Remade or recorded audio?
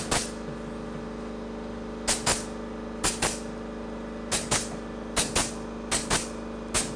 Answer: recorded